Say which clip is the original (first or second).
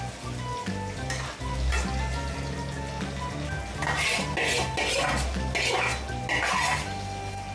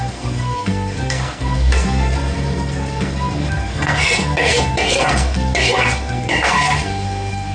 first